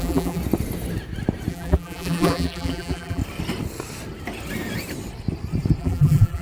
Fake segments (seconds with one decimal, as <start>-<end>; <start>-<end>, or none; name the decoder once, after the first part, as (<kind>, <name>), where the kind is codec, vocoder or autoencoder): 0.0-0.4 (vocoder, BigVGAN v2); 1.5-3.2; 5.8-6.4